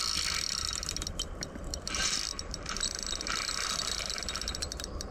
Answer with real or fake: real